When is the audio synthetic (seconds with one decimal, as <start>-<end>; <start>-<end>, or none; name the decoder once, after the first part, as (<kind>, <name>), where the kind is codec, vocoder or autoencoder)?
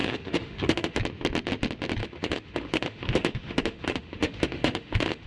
0.0-1.0 (autoencoder, DAC-VAE); 2.0-5.3